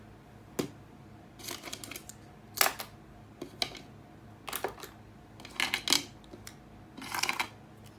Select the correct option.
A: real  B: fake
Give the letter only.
A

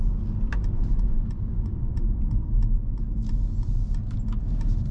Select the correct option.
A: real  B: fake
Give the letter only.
A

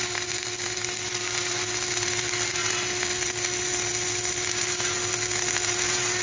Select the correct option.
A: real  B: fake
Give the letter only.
A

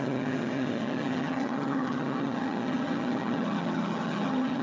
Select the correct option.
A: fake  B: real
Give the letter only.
A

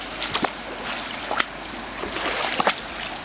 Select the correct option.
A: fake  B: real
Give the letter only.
B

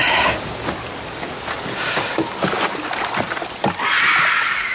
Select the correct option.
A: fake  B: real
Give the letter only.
B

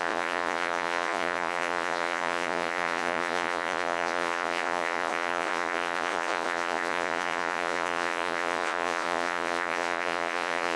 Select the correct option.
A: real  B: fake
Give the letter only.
B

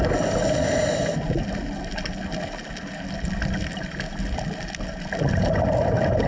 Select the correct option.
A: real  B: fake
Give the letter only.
A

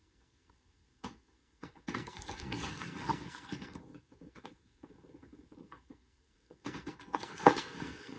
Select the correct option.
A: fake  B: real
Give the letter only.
A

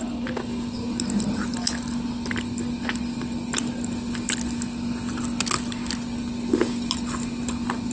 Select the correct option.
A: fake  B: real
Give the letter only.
B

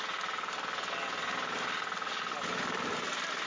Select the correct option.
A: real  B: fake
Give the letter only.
A